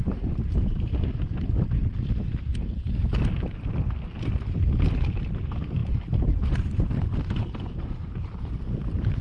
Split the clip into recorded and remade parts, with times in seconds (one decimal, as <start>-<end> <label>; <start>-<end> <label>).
0.0-1.2 remade; 1.2-5.8 recorded; 5.8-7.0 remade; 7.0-9.2 recorded